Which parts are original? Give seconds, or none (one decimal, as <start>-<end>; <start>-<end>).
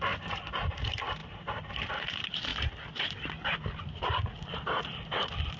2.5-3.8